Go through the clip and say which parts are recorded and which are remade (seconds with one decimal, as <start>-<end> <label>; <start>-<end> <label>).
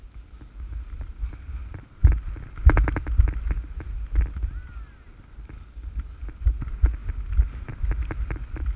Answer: 0.0-8.8 recorded